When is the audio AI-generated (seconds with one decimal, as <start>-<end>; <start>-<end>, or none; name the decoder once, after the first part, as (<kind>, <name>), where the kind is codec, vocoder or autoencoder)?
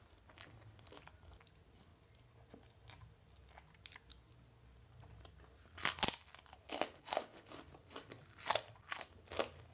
7.8-9.0 (vocoder, BigVGAN v2)